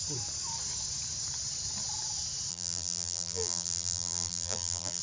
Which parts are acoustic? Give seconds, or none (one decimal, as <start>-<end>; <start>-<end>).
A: 0.0-2.5